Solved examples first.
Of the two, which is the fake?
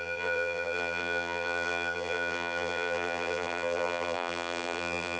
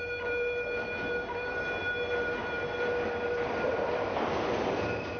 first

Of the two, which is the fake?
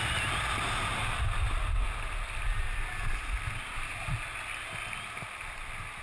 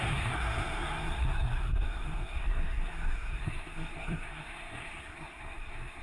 second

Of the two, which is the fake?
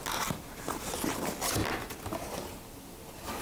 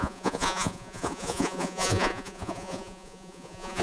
second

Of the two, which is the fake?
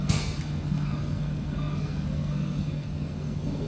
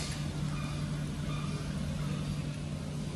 first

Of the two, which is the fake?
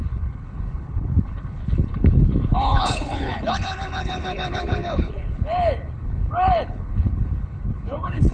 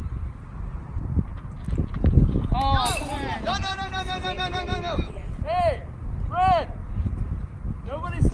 first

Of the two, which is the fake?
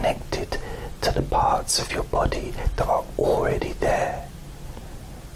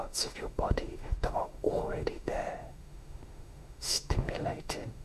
second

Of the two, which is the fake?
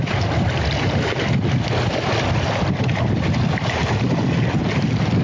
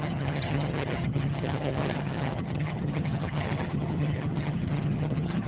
second